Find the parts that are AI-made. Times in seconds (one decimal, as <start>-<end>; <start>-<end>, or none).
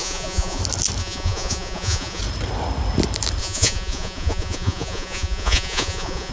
0.0-0.6; 1.0-2.2; 3.4-6.3